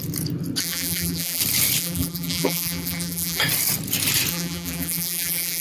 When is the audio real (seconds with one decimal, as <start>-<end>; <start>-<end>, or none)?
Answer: 0.0-0.6; 1.4-1.8; 3.4-4.3